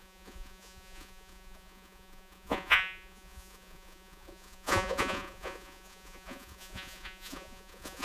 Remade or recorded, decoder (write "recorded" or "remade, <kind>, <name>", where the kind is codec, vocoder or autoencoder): remade, vocoder, Vocos